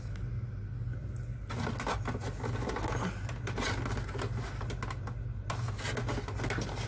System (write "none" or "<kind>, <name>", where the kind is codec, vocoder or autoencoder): none